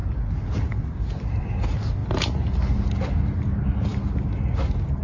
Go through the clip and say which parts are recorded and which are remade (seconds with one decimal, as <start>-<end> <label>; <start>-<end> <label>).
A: 0.0-5.0 recorded